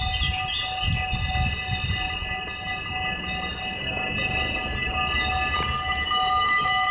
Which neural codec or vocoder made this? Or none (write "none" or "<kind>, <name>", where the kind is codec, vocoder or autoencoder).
none